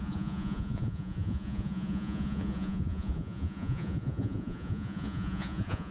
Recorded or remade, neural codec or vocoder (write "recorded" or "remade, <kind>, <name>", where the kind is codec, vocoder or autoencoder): remade, vocoder, Vocos